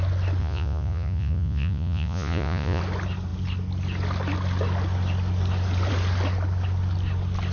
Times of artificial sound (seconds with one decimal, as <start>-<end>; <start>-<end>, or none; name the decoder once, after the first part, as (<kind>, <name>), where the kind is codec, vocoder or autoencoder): 0.4-2.8 (vocoder, Vocos)